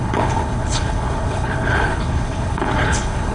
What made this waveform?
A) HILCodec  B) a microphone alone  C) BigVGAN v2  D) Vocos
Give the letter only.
A